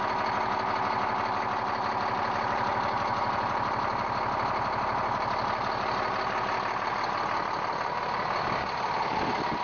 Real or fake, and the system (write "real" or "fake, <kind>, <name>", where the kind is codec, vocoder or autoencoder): real